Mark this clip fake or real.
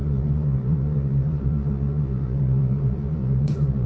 fake